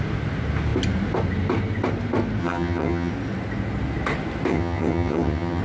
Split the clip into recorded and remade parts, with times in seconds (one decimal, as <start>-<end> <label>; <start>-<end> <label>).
0.0-2.4 recorded; 2.4-3.1 remade; 3.1-4.5 recorded; 4.5-5.6 remade